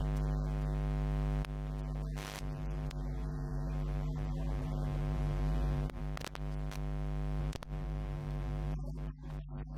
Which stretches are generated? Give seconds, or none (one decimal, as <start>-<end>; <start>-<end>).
2.4-6.0; 7.4-9.8

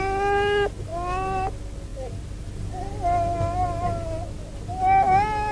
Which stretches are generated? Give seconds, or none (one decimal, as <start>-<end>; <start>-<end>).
none

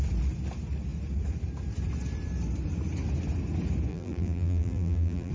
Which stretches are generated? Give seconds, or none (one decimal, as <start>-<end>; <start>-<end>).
3.9-5.3

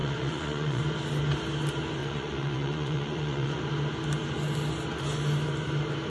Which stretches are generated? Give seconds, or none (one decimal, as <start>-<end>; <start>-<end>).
0.0-0.8; 2.0-3.6

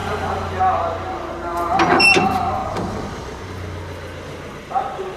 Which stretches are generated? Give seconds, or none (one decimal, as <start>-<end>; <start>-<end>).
0.0-0.6; 1.5-2.2; 2.6-3.4

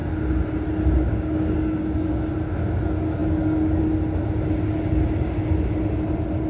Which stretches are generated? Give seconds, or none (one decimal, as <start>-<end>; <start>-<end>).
1.1-2.3

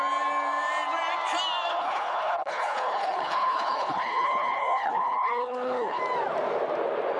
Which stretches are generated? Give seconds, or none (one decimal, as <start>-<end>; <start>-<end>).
1.7-6.0